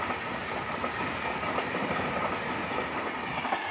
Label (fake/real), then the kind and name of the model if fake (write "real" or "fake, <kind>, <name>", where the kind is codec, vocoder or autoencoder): real